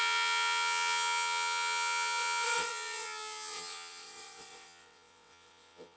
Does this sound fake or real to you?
fake